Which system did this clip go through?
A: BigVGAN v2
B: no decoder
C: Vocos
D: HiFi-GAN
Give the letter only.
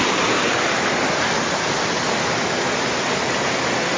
B